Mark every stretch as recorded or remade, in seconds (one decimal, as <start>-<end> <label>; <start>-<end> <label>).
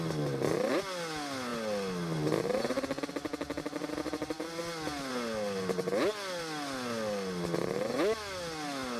0.0-9.0 recorded